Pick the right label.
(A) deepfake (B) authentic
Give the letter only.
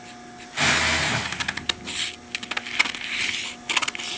B